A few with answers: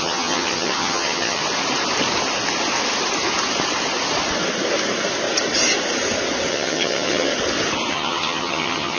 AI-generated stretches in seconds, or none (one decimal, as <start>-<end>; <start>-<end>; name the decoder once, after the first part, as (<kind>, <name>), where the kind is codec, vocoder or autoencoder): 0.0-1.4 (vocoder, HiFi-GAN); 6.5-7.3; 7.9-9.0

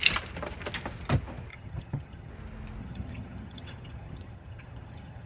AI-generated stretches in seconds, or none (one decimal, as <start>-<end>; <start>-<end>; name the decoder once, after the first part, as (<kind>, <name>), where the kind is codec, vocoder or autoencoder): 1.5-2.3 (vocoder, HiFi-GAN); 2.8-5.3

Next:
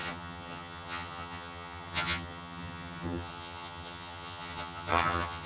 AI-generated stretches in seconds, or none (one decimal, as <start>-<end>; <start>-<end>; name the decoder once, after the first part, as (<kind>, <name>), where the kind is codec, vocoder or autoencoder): 0.0-5.5 (vocoder, HiFi-GAN)